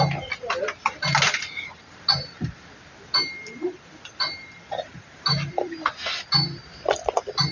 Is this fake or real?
real